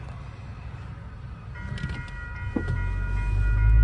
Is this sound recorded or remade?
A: recorded